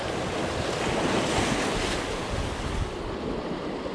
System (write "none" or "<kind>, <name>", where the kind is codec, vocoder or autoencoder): none